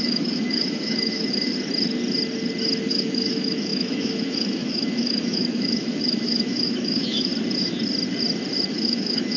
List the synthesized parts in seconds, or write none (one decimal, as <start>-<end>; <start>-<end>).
0.0-1.5; 2.9-7.3; 8.7-9.4